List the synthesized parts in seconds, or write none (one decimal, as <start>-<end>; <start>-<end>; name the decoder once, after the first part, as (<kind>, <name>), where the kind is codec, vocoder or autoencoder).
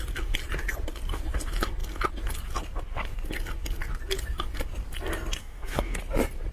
5.4-6.0 (codec, DAC)